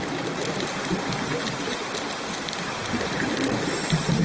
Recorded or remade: recorded